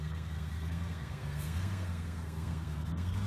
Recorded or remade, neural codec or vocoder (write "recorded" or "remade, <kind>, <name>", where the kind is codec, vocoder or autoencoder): remade, codec, SNAC